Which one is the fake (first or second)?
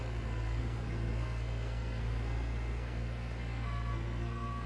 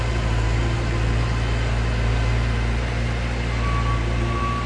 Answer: first